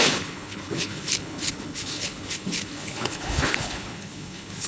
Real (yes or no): no